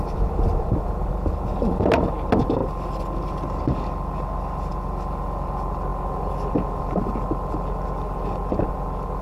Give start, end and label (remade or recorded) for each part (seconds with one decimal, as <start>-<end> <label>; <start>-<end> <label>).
0.0-9.2 recorded

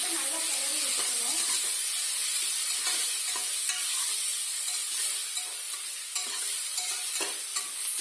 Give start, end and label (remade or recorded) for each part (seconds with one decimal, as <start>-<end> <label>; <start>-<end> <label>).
0.0-8.0 recorded

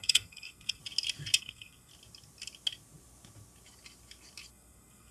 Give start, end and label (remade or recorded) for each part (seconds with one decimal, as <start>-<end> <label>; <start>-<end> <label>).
0.0-0.8 remade; 0.8-1.4 recorded; 1.4-1.9 remade; 1.9-4.5 recorded; 4.5-5.1 remade

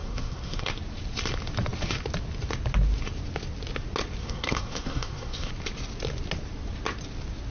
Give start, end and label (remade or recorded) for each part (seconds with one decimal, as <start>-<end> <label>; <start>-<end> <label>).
0.0-0.7 remade; 0.7-4.2 recorded; 4.2-5.5 remade; 5.5-7.5 recorded

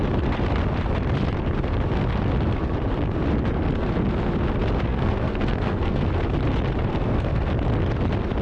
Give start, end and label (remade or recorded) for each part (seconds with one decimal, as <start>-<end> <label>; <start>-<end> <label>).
0.0-4.9 recorded; 4.9-6.0 remade; 6.0-6.9 recorded; 6.9-7.5 remade; 7.5-8.4 recorded

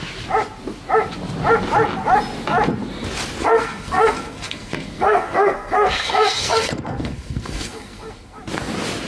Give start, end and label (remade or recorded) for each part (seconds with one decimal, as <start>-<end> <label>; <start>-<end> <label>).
0.0-3.4 recorded; 3.4-8.4 remade; 8.4-9.1 recorded

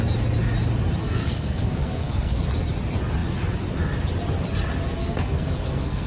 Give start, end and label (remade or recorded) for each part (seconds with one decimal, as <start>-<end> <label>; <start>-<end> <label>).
0.0-1.0 recorded; 1.0-2.4 remade; 2.4-5.0 recorded; 5.0-6.1 remade

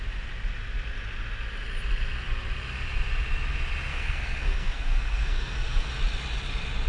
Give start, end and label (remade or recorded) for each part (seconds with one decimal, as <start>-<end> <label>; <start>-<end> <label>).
0.0-3.9 recorded; 3.9-5.9 remade; 5.9-6.9 recorded